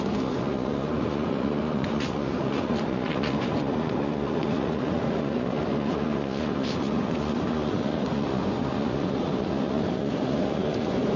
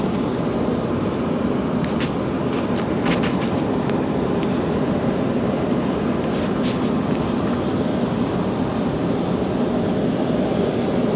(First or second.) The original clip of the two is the second